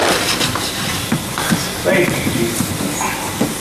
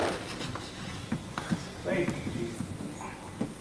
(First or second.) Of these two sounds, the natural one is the second